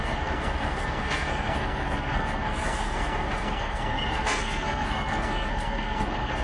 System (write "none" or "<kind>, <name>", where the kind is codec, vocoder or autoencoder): codec, SNAC